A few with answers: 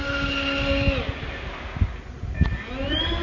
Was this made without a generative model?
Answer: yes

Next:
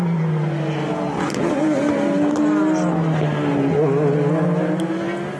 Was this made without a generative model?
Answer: yes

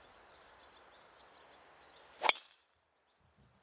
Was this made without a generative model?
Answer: yes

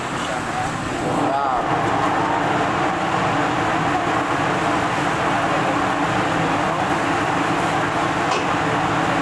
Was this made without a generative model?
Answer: yes